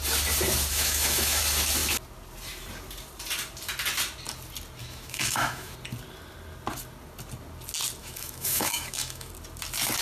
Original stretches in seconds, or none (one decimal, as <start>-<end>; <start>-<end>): 0.0-0.7; 1.4-4.8; 5.7-8.0; 9.3-10.0